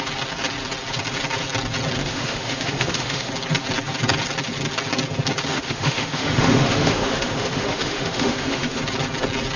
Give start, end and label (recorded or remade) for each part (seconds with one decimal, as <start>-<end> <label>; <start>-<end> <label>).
0.0-2.0 recorded; 2.0-3.3 remade; 3.3-5.5 recorded; 5.5-8.8 remade; 8.8-9.6 recorded